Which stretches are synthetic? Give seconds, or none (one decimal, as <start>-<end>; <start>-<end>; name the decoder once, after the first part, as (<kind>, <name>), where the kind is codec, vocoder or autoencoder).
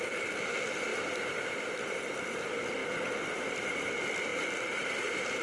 0.0-2.8 (vocoder, BigVGAN v2); 3.5-5.4